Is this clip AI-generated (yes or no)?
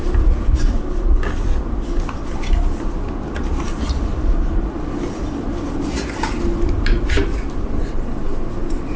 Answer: no